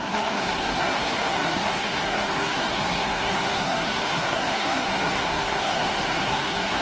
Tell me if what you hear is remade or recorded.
remade